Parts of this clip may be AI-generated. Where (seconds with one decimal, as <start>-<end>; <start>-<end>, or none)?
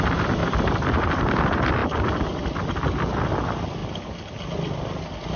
none